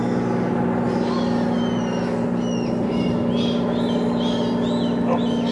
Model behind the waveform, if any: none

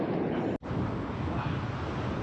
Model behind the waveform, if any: none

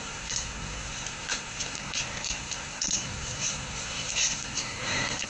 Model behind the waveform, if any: codec, SNAC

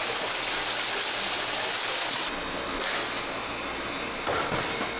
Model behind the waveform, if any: none